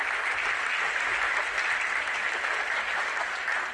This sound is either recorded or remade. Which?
recorded